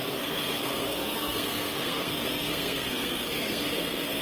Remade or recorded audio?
remade